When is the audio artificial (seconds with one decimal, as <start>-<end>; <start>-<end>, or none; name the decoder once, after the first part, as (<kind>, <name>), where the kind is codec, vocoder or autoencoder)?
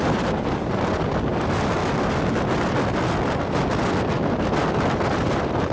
none